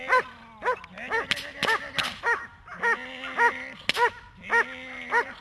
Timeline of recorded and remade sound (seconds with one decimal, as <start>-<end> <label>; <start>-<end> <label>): 0.0-5.4 recorded